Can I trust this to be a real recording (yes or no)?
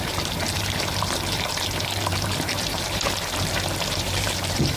no